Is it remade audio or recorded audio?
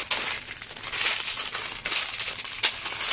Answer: recorded